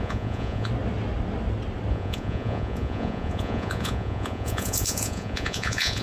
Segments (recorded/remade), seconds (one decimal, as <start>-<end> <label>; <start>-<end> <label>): 0.0-0.7 remade; 0.7-1.9 recorded; 1.9-6.0 remade